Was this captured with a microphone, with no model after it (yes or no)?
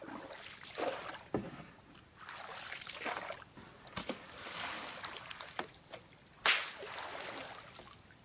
yes